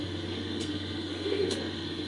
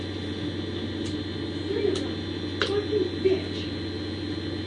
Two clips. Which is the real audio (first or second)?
second